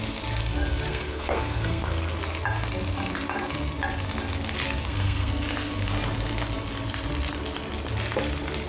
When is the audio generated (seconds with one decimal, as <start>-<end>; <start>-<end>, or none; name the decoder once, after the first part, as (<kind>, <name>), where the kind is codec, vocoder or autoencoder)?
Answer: 0.9-2.2 (codec, SNAC); 4.8-5.3